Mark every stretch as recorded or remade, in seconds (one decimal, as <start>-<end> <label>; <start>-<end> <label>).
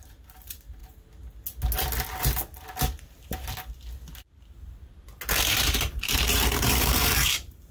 0.0-0.8 remade; 0.8-5.4 recorded; 5.4-7.7 remade